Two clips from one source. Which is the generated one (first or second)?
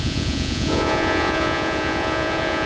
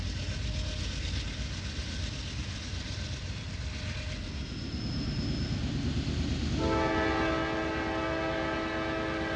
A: first